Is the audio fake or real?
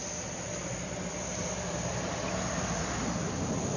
real